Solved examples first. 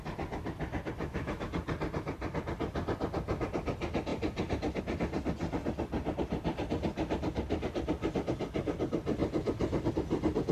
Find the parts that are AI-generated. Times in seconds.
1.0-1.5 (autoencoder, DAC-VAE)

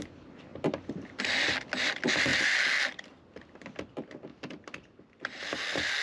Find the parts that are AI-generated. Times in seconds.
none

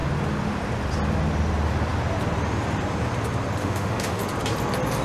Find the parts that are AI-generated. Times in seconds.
3.6-4.2 (autoencoder, DAC-VAE)